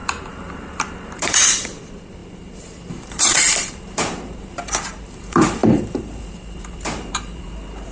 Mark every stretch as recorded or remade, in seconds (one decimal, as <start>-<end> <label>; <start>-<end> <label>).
0.0-7.9 remade